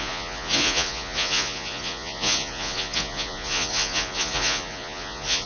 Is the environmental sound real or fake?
fake